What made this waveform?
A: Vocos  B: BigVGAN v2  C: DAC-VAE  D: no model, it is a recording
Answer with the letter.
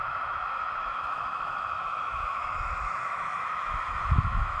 C